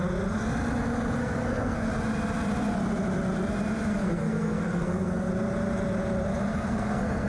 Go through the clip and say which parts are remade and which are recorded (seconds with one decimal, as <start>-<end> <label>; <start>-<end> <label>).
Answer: 0.0-1.2 recorded; 1.2-1.9 remade; 1.9-3.9 recorded; 3.9-5.3 remade; 5.3-6.5 recorded; 6.5-7.3 remade